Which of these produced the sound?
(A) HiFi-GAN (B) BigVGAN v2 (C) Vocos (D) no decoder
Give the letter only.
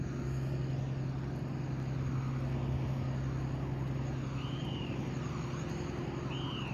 D